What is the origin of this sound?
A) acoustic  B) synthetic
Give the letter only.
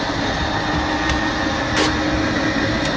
A